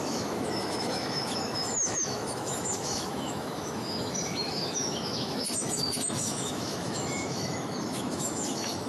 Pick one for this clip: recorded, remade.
remade